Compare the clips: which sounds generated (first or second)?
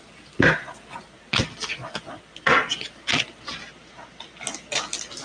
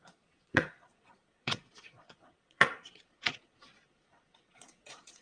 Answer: second